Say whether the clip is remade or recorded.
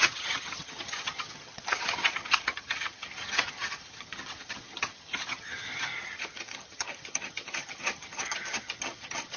remade